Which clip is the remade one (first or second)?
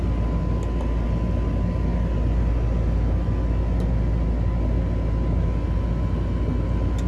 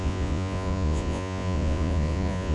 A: second